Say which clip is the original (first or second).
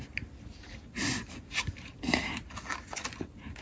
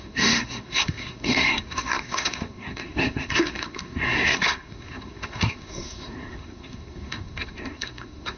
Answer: first